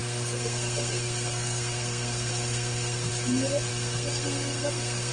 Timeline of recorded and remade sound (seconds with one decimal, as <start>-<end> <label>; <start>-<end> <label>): 0.0-3.1 remade; 3.1-3.7 recorded; 3.7-5.1 remade